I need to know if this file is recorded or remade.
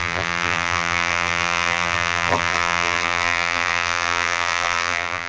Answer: remade